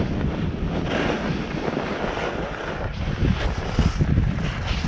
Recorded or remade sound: recorded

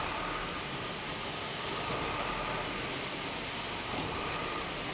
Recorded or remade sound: recorded